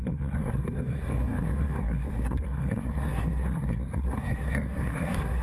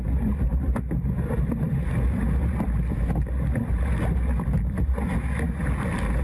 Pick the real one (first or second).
second